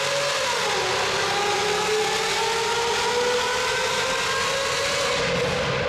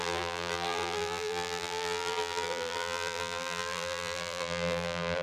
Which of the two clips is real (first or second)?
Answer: first